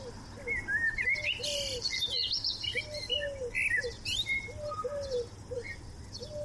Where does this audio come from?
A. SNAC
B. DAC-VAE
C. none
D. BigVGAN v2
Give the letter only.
C